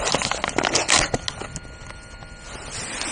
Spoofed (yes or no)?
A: no